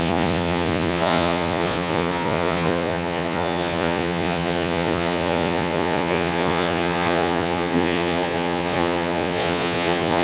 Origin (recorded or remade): remade